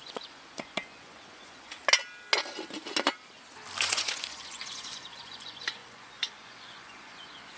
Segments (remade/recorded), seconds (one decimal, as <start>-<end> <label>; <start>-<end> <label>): 0.0-1.8 remade; 1.8-3.8 recorded; 3.8-7.6 remade